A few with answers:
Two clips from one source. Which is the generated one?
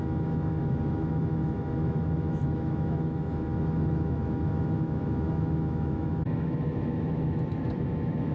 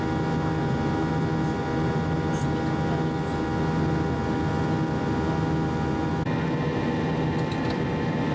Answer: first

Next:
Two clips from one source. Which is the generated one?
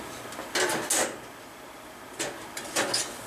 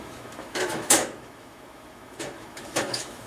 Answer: second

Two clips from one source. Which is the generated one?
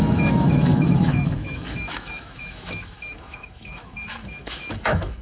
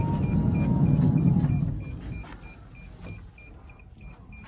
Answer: first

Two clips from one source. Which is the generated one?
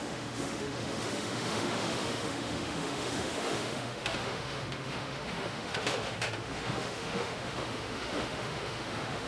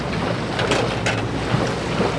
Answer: first